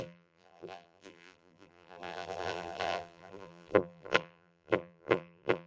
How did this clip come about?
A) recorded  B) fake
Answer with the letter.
B